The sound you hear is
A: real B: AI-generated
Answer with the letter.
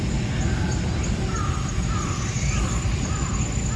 A